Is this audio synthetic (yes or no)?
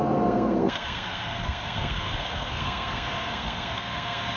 yes